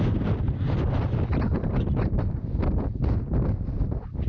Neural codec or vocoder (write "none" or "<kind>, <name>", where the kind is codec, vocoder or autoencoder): none